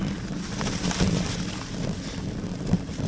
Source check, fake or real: real